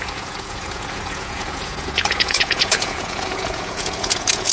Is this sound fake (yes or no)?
yes